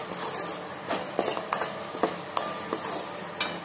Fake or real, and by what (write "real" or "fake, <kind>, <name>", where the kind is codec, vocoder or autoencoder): real